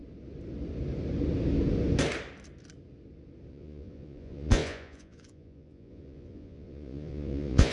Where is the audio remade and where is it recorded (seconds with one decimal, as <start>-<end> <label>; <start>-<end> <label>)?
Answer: 0.0-3.5 recorded; 3.5-7.7 remade